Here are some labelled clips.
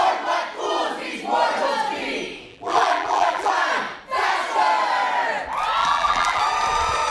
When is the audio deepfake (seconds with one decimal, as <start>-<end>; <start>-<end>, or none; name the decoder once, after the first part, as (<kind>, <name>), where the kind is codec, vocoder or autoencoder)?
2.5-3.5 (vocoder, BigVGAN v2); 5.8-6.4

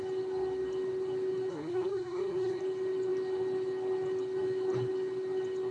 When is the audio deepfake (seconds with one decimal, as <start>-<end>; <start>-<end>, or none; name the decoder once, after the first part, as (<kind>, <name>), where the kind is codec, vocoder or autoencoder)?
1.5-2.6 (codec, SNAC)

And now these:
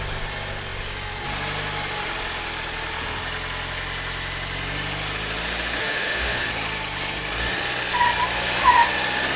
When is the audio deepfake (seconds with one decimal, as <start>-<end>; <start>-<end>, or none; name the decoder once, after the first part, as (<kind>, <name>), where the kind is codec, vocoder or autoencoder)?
5.8-6.5 (autoencoder, DAC-VAE)

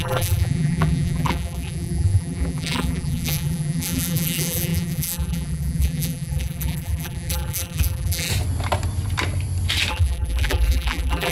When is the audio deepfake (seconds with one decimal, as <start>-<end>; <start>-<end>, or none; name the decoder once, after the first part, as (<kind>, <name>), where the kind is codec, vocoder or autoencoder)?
0.0-8.3 (vocoder, BigVGAN v2); 9.9-11.3

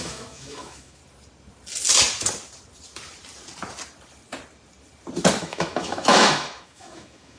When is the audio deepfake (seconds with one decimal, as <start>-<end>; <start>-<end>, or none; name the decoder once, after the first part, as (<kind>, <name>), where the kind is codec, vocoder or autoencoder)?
0.0-1.0 (autoencoder, DAC-VAE); 5.4-7.4

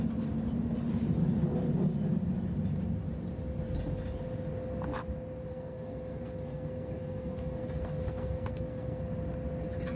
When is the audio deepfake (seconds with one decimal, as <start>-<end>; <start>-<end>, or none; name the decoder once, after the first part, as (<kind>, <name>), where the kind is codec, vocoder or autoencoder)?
5.5-9.0 (codec, SNAC)